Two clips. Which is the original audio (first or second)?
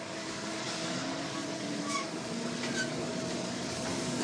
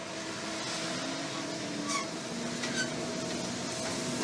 second